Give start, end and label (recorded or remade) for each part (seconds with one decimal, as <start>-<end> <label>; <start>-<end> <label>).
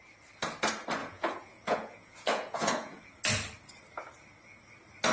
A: 0.0-1.0 recorded; 1.0-3.0 remade; 3.0-5.1 recorded